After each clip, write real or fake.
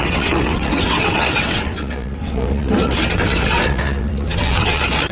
fake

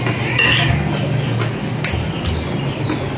real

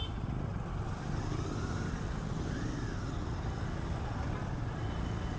real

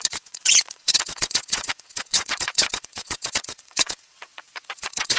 fake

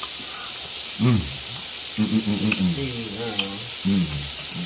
real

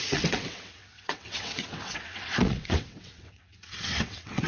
fake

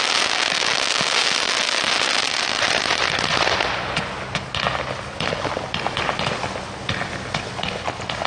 real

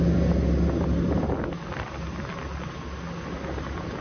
real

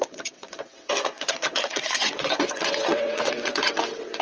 fake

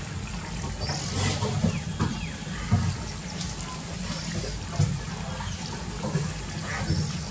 real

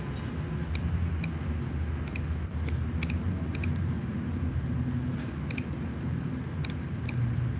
real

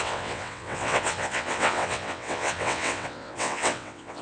fake